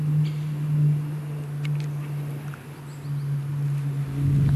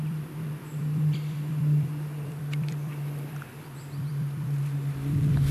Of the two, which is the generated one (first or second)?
second